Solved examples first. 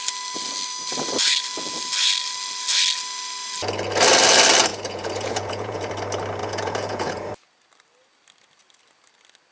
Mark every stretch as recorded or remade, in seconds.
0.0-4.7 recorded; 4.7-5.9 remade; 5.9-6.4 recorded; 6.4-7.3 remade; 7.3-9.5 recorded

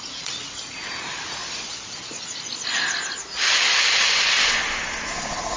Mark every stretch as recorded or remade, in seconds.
0.0-1.4 remade; 1.4-4.8 recorded; 4.8-5.6 remade

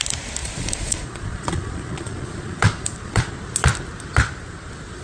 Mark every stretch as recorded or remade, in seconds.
0.0-0.4 recorded; 0.4-3.3 remade; 3.3-5.0 recorded

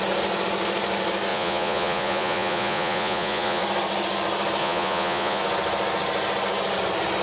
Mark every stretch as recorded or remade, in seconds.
0.0-1.3 recorded; 1.3-3.6 remade; 3.6-4.6 recorded; 4.6-5.4 remade; 5.4-7.2 recorded